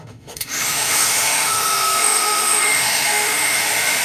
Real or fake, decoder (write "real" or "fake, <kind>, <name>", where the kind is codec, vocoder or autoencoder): fake, autoencoder, DAC-VAE